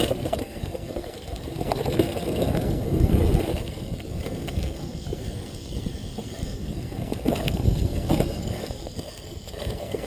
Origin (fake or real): fake